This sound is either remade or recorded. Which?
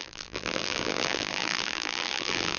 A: remade